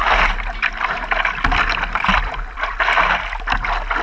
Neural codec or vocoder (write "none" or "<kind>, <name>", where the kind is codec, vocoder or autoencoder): none